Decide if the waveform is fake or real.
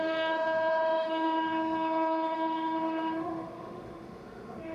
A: fake